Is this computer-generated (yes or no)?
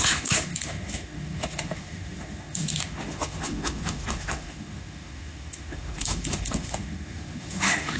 yes